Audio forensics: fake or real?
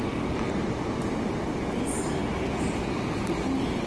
real